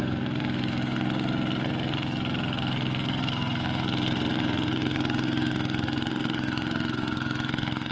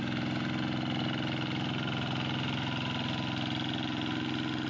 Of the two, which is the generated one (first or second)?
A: first